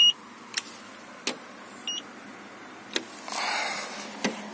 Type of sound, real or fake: real